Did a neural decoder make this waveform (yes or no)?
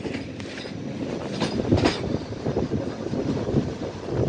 no